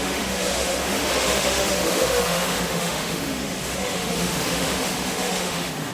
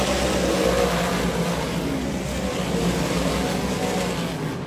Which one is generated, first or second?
first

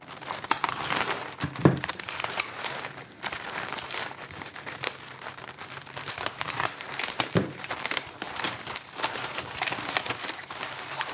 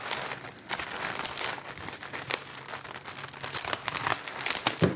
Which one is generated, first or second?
first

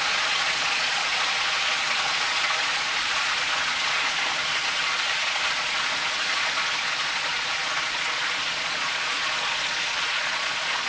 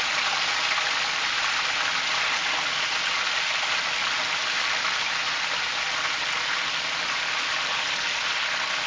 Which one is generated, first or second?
first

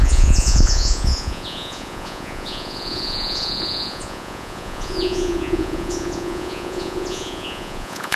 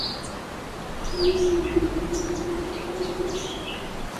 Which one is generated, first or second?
first